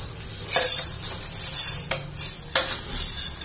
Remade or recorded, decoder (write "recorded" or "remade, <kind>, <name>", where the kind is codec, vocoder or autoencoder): recorded